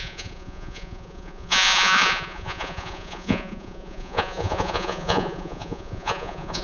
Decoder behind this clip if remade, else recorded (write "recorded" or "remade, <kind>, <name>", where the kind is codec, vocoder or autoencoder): remade, vocoder, Vocos